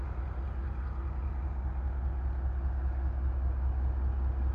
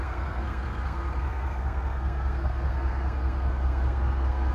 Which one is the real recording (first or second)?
first